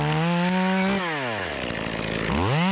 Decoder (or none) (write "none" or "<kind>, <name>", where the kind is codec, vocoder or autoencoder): none